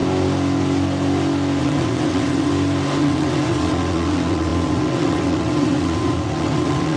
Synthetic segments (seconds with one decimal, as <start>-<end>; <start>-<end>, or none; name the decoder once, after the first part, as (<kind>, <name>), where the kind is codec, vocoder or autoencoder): 1.6-2.5 (vocoder, WaveNeXt); 3.0-7.0